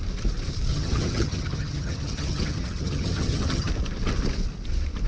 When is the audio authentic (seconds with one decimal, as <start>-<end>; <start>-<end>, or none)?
0.0-0.7; 3.7-5.1